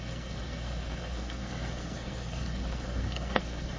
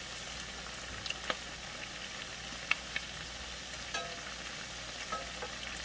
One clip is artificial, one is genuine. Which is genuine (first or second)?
second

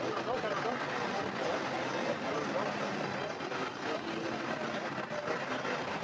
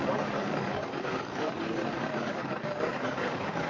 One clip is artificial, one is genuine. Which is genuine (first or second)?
first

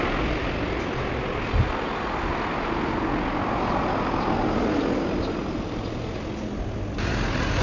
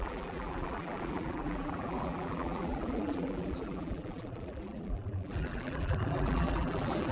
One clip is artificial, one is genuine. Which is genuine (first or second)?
first